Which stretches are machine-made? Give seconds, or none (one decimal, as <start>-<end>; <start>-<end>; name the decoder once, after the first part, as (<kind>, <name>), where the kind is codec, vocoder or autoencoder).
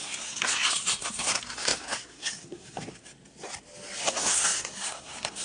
0.0-3.1 (codec, SNAC); 4.0-5.4